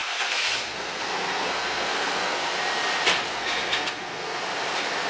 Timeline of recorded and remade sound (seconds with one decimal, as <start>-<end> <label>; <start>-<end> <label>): 0.0-2.5 remade; 2.5-3.3 recorded; 3.3-4.4 remade; 4.4-5.1 recorded